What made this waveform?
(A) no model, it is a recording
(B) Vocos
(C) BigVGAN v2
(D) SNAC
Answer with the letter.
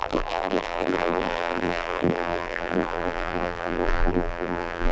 C